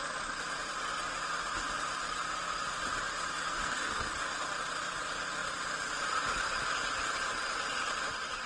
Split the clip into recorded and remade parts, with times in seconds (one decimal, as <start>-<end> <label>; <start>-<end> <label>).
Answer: 0.0-3.5 recorded; 3.5-4.1 remade; 4.1-8.5 recorded